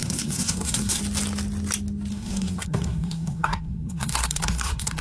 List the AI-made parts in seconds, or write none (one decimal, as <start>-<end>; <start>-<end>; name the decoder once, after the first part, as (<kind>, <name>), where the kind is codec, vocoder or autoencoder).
0.0-1.0 (codec, SNAC); 2.1-5.0